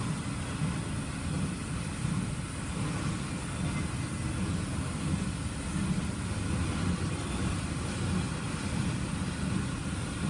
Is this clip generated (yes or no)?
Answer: no